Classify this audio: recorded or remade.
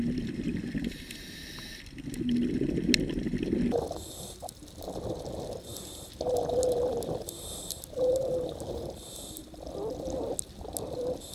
recorded